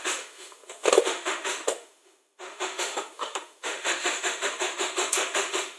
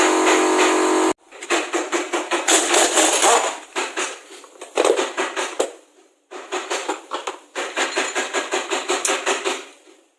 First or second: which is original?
second